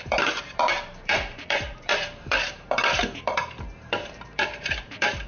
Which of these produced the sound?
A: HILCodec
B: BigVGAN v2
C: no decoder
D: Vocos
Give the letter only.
B